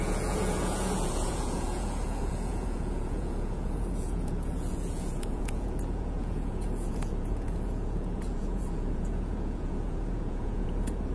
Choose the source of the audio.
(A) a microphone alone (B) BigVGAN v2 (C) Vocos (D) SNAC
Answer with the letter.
C